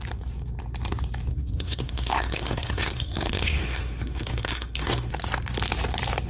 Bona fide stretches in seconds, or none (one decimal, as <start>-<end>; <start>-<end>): 0.0-1.3; 5.1-6.3